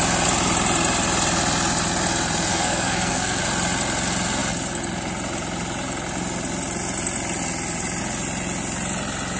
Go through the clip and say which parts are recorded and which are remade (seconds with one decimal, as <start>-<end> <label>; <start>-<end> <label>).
0.0-2.5 recorded; 2.5-3.4 remade; 3.4-9.4 recorded